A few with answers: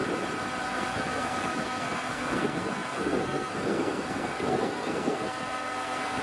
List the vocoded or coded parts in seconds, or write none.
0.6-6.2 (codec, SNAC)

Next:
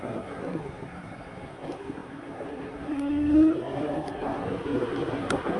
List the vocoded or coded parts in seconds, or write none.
0.0-5.6 (codec, SNAC)

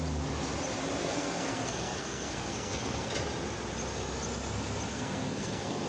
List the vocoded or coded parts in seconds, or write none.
1.0-3.1 (codec, SNAC); 4.9-5.9

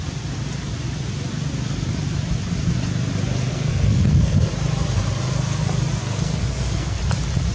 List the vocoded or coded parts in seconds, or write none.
3.5-4.5 (codec, SNAC); 6.0-7.0

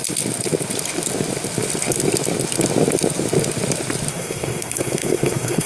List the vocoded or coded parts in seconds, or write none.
4.1-5.7 (codec, SNAC)

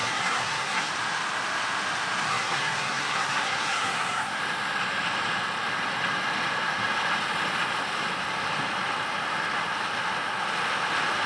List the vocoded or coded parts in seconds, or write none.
0.0-0.9 (codec, SNAC); 2.3-4.4

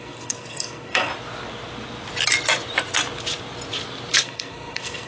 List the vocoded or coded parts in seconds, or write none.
0.0-1.1 (codec, SNAC); 4.2-5.1